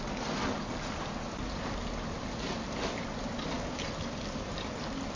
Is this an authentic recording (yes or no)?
yes